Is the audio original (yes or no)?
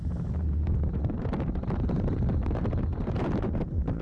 no